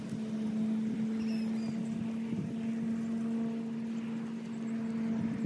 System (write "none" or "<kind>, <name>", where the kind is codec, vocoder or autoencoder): none